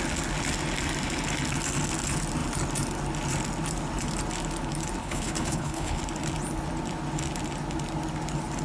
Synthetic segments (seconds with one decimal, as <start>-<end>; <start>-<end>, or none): 5.0-6.0